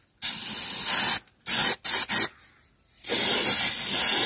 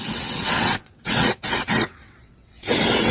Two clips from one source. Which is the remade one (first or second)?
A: second